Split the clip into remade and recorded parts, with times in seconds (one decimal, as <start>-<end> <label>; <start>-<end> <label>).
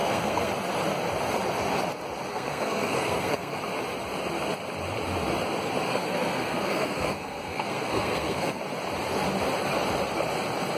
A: 0.0-0.5 remade; 0.5-2.3 recorded; 2.3-3.6 remade; 3.6-5.9 recorded; 5.9-8.6 remade; 8.6-10.8 recorded